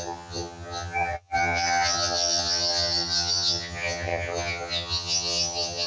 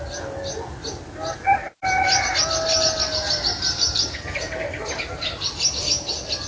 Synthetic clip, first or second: first